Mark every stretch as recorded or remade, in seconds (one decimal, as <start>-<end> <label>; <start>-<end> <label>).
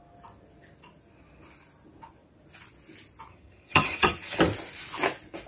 0.0-3.3 recorded; 3.3-4.4 remade; 4.4-5.5 recorded